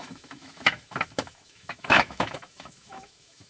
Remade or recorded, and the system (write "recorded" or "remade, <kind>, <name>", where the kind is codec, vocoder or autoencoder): remade, autoencoder, DAC-VAE